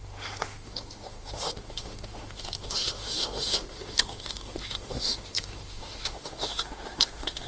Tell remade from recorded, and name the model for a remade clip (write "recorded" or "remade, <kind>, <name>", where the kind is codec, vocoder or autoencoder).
remade, autoencoder, DAC-VAE